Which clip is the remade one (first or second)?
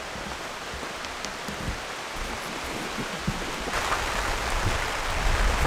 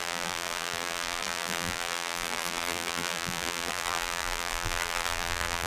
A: second